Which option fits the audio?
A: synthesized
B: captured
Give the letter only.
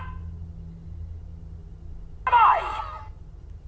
B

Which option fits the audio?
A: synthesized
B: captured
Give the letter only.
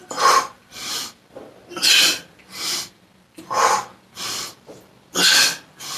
A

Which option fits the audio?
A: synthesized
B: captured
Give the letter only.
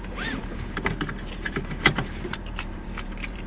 A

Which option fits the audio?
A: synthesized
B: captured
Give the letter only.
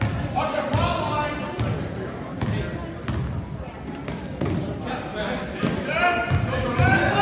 B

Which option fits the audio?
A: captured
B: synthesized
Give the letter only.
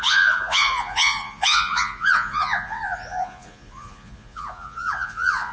B